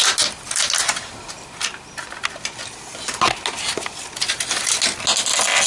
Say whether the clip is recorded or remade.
recorded